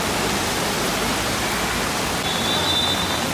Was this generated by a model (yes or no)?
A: no